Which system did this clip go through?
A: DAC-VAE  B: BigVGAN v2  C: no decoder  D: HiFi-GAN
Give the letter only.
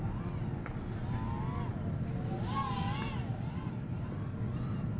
C